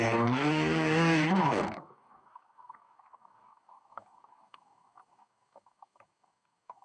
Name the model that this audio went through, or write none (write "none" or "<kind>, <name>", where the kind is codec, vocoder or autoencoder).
codec, DAC